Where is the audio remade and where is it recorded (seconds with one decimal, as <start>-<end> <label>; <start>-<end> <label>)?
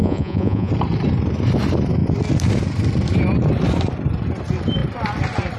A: 0.0-0.7 remade; 0.7-5.6 recorded